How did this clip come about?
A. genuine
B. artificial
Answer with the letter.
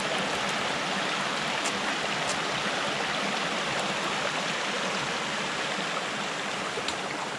A